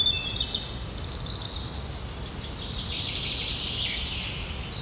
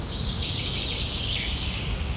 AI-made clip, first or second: second